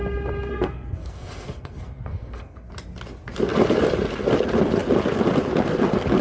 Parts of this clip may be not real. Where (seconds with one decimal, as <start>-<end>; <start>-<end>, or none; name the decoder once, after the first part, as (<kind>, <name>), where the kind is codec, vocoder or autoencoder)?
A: 0.5-2.7 (codec, SNAC)